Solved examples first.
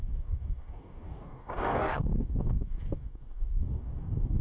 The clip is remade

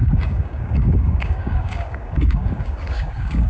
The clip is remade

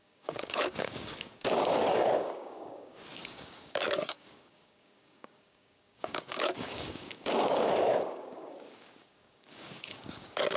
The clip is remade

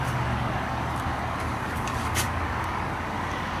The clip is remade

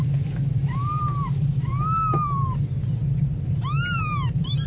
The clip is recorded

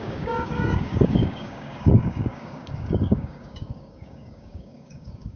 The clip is remade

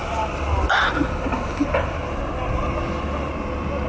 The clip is recorded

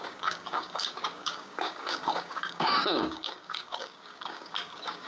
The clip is remade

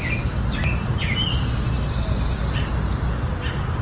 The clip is recorded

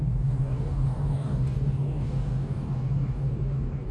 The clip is remade